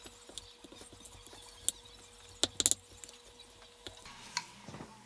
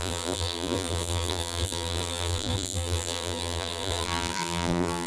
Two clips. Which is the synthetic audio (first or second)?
second